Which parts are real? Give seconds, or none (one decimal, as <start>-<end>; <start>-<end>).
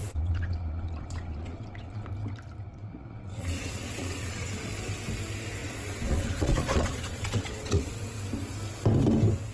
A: 2.1-2.7; 4.7-5.6; 7.9-9.5